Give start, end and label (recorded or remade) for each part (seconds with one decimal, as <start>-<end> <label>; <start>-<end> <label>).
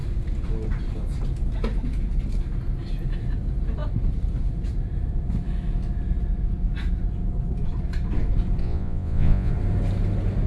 0.0-8.6 recorded; 8.6-9.5 remade; 9.5-10.5 recorded